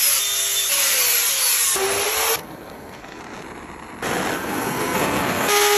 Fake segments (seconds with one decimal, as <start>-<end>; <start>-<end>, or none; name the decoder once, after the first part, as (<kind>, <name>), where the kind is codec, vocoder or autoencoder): 2.4-3.2 (codec, SNAC); 4.3-5.8